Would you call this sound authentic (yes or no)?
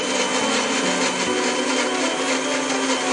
yes